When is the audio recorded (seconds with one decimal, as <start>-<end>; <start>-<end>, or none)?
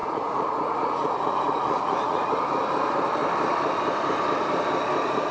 2.3-5.3